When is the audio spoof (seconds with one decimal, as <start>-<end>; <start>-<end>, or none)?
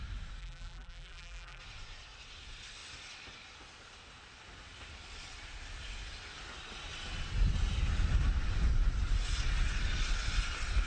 0.4-1.6